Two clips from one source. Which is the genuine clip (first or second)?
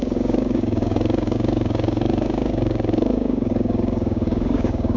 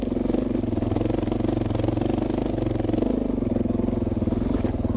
second